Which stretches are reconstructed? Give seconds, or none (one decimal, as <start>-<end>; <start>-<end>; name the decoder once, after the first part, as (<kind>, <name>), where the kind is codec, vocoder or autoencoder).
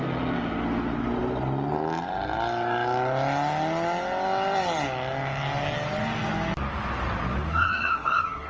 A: 7.5-8.5 (codec, SNAC)